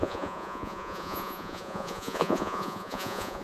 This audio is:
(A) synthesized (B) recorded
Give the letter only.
A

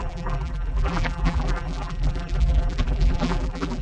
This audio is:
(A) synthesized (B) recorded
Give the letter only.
A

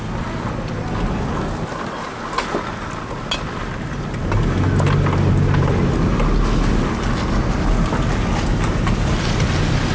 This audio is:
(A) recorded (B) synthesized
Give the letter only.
A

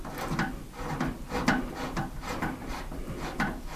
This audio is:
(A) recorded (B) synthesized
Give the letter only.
A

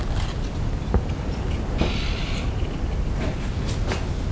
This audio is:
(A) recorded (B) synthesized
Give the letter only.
A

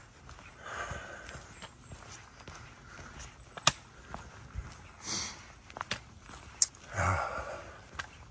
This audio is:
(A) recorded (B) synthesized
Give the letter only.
A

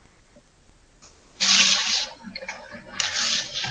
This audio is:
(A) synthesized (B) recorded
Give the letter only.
B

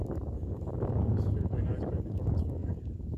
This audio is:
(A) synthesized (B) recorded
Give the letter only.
A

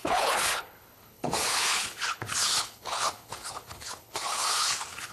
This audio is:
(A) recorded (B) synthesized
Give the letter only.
B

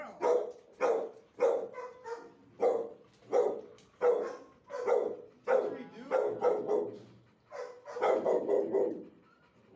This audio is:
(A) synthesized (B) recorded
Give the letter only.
B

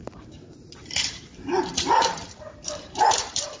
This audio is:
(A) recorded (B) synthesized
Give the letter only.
B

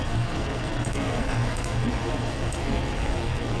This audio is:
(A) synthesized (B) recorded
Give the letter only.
A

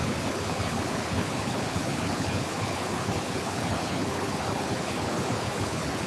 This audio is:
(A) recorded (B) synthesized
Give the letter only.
B